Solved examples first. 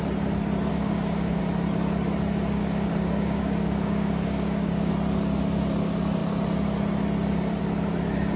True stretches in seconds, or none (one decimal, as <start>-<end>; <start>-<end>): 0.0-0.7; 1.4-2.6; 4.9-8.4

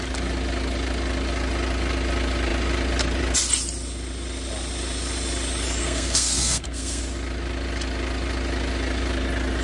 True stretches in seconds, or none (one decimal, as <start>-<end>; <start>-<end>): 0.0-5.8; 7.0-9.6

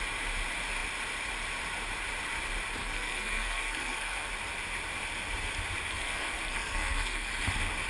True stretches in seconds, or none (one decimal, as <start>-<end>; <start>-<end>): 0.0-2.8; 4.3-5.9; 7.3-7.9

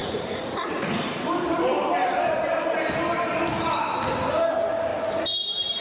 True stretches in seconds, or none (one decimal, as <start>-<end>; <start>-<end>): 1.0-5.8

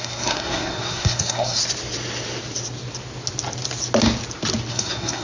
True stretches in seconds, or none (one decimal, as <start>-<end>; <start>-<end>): 1.6-4.7